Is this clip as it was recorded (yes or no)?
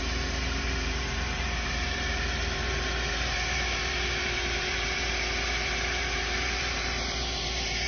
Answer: no